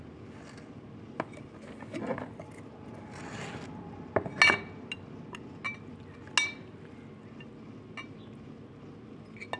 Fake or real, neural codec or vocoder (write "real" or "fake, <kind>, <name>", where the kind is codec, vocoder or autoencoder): real